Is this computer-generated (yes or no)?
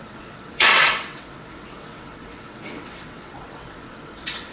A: yes